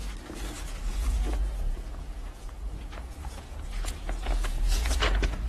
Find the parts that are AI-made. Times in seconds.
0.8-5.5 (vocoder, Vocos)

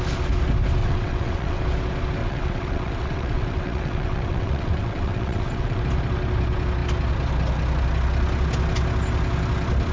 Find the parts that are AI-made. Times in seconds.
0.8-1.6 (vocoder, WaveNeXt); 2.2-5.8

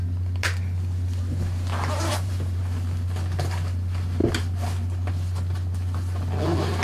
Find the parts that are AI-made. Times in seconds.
2.1-2.6 (vocoder, BigVGAN v2)

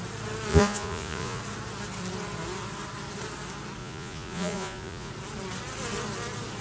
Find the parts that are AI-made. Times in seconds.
0.5-1.4 (vocoder, Vocos); 3.8-5.1